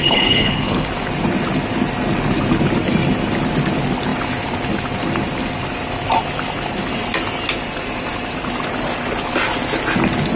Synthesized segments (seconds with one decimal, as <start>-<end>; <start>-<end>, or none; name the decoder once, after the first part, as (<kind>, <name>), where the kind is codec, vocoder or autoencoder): 0.0-0.9 (codec, HILCodec)